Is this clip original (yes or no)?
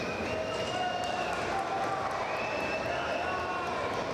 yes